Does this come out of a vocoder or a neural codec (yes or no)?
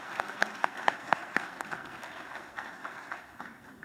yes